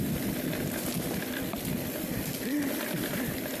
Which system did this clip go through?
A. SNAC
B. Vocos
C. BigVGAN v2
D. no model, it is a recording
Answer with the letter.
D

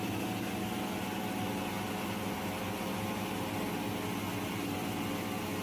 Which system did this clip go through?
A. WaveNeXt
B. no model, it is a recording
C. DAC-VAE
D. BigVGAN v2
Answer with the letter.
B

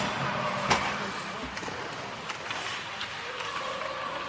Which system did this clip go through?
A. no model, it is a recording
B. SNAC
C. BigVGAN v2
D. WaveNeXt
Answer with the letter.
A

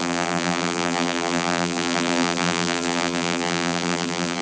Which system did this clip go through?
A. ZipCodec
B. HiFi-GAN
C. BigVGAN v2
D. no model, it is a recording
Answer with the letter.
C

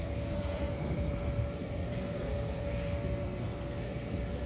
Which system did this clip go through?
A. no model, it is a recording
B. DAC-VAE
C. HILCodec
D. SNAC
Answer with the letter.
D